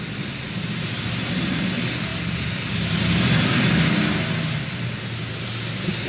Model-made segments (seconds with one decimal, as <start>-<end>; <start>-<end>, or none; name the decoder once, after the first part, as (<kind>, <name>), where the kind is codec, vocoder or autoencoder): none